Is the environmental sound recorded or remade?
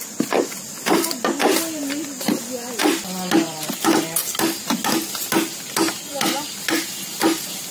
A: recorded